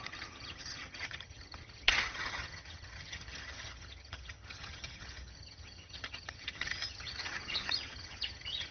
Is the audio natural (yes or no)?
no